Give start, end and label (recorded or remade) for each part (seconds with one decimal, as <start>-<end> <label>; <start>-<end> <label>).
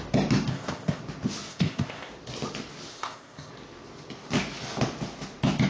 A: 0.0-0.5 recorded; 0.5-1.0 remade; 1.0-1.5 recorded; 1.5-2.1 remade; 2.1-2.9 recorded; 2.9-3.5 remade; 3.5-5.7 recorded